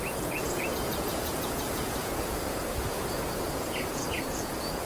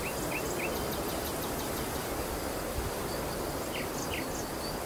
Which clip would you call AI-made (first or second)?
first